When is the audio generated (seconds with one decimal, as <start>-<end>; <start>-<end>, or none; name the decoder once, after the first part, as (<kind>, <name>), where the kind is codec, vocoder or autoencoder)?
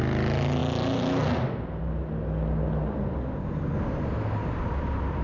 none